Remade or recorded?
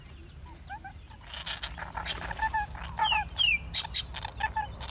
recorded